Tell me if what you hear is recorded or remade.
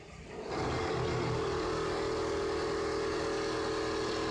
recorded